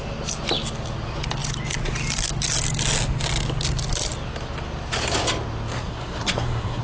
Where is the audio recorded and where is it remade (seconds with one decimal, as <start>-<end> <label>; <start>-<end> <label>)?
0.0-5.7 recorded; 5.7-6.8 remade